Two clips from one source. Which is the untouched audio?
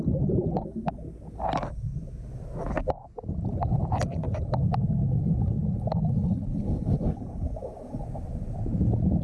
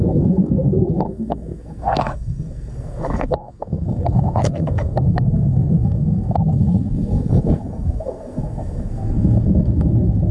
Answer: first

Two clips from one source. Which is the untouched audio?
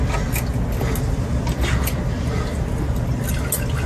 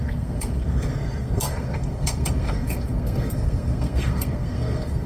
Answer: first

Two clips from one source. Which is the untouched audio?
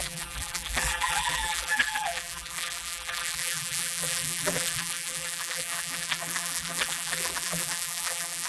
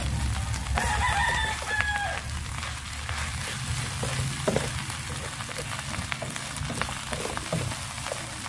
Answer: second